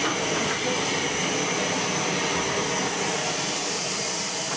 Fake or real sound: fake